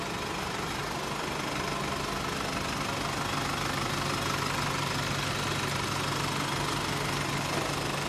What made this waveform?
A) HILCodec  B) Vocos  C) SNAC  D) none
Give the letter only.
D